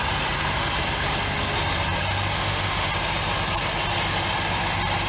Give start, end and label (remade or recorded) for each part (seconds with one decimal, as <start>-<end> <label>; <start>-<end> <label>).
0.0-2.4 recorded; 2.4-2.9 remade; 2.9-5.1 recorded